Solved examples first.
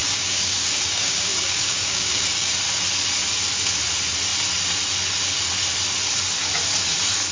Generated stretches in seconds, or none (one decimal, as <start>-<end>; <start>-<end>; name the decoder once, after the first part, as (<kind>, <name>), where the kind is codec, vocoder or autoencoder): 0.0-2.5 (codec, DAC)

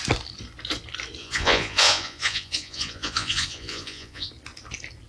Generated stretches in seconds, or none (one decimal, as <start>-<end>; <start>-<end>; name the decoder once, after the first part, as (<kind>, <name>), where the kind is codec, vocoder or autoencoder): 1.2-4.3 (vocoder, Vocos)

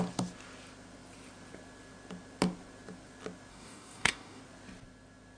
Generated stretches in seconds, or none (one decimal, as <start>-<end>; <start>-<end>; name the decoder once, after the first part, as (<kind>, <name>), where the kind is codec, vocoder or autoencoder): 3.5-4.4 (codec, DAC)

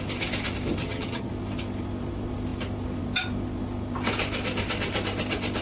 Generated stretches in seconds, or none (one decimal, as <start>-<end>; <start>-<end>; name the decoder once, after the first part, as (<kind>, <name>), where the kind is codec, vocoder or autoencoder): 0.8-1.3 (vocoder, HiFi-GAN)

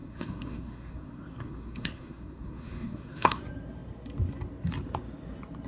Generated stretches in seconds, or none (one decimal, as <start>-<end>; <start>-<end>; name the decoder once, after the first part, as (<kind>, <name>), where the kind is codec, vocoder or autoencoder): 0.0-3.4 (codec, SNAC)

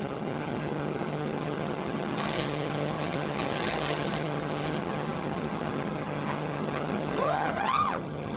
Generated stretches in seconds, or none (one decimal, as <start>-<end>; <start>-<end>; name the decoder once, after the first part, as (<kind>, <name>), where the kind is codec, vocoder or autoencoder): 0.0-8.4 (vocoder, HiFi-GAN)